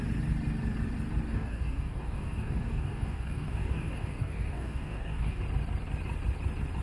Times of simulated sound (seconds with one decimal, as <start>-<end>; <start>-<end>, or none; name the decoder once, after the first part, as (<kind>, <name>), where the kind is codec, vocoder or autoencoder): 1.3-5.4 (codec, DAC)